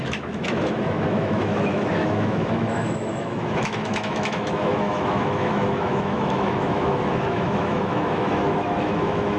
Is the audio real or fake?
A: fake